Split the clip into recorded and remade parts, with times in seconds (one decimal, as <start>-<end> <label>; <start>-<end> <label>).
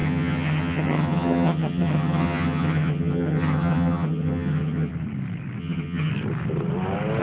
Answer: 0.0-4.9 remade; 4.9-5.6 recorded; 5.6-6.1 remade; 6.1-7.2 recorded